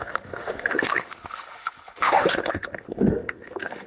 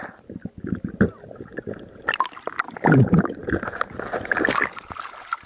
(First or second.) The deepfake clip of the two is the first